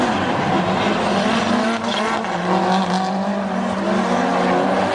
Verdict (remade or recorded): recorded